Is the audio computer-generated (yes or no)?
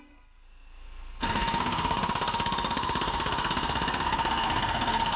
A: yes